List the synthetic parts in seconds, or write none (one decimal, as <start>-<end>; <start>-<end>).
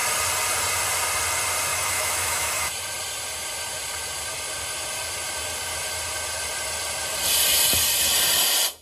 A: 1.7-2.7